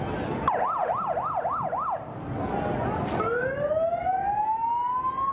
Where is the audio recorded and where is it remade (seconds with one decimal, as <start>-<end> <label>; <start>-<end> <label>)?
0.0-5.3 recorded